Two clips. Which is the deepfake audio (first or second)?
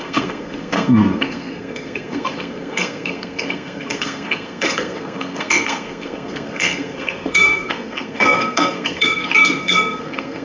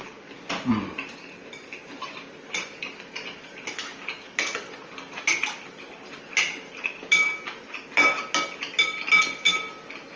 first